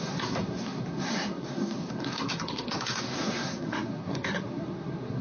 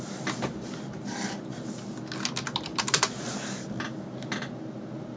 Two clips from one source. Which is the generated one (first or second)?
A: first